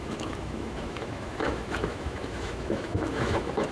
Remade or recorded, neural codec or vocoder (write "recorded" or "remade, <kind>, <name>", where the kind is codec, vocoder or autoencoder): remade, autoencoder, DAC-VAE